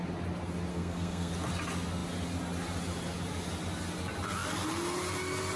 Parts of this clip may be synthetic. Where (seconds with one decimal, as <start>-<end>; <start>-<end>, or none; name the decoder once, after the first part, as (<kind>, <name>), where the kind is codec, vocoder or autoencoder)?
0.7-1.3 (codec, SNAC)